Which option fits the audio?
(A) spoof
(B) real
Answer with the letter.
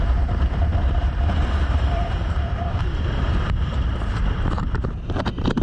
A